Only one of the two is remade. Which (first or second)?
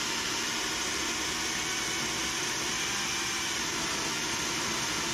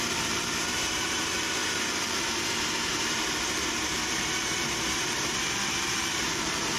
second